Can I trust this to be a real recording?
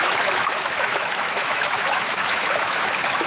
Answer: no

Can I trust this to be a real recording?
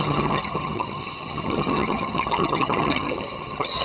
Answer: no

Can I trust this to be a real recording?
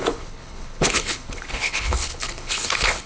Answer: no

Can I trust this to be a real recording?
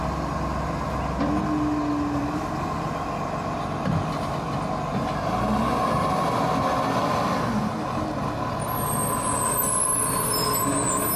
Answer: yes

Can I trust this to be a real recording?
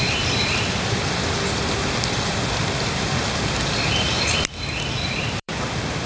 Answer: no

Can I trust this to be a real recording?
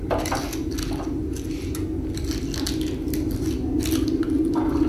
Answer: yes